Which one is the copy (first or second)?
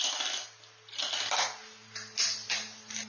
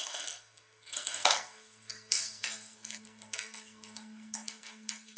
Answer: second